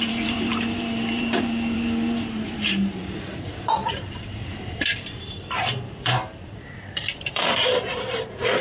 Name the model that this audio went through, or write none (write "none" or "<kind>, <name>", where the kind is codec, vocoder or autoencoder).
vocoder, BigVGAN v2